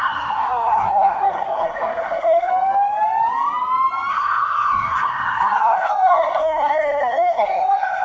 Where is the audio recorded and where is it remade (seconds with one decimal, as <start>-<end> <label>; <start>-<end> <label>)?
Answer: 0.0-2.5 remade; 2.5-4.1 recorded; 4.1-8.0 remade